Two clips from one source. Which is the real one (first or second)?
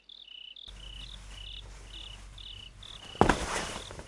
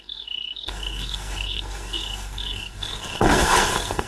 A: first